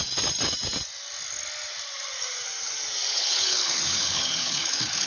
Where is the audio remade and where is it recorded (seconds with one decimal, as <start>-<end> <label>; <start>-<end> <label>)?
0.0-3.1 recorded; 3.1-5.1 remade